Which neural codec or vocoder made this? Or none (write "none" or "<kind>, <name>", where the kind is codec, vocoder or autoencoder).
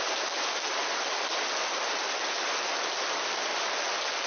none